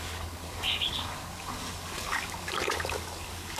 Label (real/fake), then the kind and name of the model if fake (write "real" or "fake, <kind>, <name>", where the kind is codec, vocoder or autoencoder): fake, codec, DAC